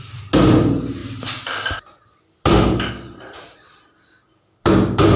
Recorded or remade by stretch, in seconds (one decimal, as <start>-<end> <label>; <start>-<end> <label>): 0.0-5.2 recorded